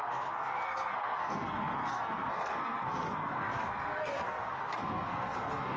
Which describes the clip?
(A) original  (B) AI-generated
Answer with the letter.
B